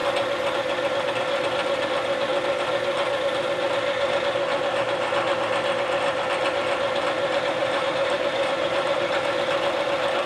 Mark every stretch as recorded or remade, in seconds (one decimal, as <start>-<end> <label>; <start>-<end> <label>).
0.0-7.6 recorded; 7.6-9.2 remade; 9.2-10.3 recorded